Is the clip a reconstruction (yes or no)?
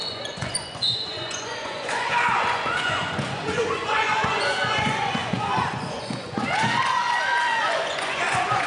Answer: yes